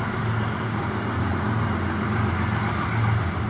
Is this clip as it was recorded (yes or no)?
yes